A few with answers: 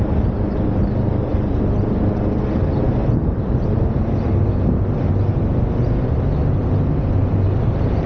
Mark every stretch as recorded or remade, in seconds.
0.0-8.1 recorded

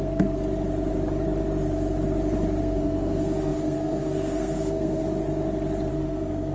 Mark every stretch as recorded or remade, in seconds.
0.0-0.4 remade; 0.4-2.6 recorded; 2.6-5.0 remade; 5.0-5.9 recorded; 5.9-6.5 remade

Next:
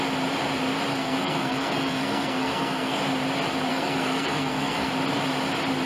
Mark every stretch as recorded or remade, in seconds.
0.0-0.9 recorded; 0.9-3.0 remade; 3.0-3.7 recorded; 3.7-4.9 remade; 4.9-5.9 recorded